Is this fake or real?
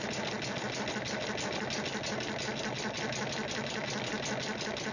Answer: real